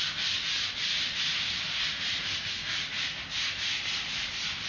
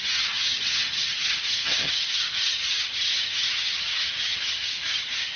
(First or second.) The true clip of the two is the first